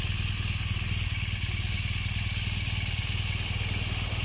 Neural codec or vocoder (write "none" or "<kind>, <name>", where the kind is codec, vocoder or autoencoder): none